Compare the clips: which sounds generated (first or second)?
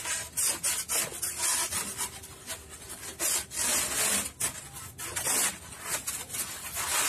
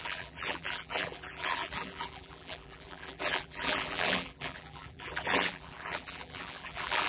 second